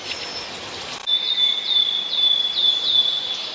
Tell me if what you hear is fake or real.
real